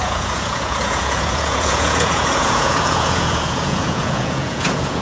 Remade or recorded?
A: remade